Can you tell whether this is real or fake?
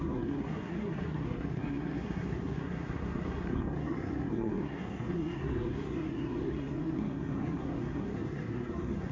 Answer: fake